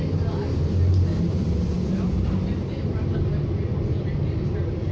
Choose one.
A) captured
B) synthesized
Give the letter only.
A